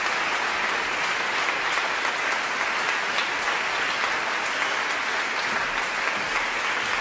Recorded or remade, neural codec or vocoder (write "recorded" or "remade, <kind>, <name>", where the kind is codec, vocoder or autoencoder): recorded